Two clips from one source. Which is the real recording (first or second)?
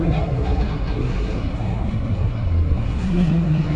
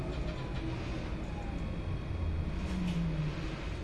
second